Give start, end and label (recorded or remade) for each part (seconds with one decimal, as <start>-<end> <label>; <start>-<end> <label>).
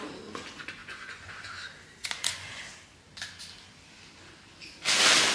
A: 0.0-0.8 recorded; 0.8-1.3 remade; 1.3-2.0 recorded; 2.0-2.6 remade; 2.6-5.3 recorded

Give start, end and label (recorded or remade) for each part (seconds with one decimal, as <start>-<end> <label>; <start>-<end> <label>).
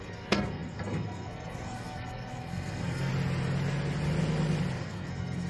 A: 0.0-3.1 remade; 3.1-4.8 recorded; 4.8-5.5 remade